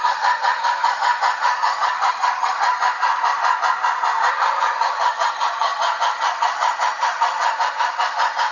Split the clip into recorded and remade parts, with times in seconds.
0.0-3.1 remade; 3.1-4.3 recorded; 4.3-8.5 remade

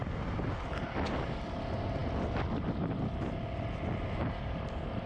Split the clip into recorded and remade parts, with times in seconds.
0.0-5.1 recorded

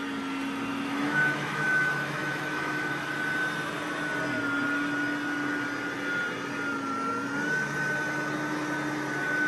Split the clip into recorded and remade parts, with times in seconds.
0.0-0.7 recorded; 0.7-3.1 remade; 3.1-9.5 recorded

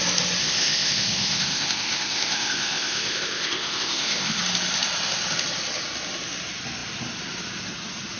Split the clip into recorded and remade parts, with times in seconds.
0.0-0.4 recorded; 0.4-4.4 remade; 4.4-8.2 recorded

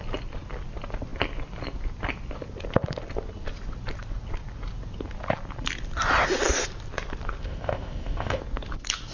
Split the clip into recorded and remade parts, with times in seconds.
0.0-7.4 recorded; 7.4-8.4 remade; 8.4-9.1 recorded